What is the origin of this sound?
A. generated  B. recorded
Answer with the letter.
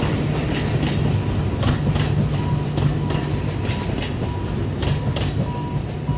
B